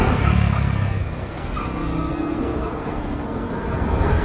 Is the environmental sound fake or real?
fake